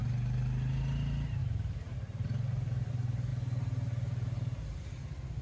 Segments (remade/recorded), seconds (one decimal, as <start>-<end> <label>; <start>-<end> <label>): 0.0-1.4 recorded; 1.4-2.9 remade; 2.9-5.4 recorded